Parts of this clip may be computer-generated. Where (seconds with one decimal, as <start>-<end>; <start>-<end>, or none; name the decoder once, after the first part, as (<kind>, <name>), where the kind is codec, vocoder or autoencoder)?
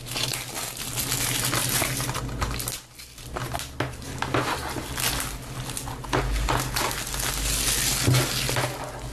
none